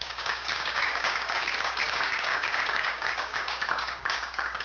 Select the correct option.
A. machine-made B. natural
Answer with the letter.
A